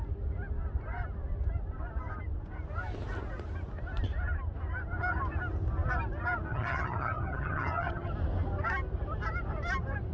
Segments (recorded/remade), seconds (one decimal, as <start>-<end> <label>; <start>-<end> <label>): 0.0-6.5 recorded; 6.5-8.1 remade; 8.1-10.1 recorded